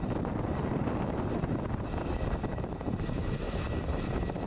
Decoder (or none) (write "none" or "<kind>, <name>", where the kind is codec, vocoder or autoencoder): none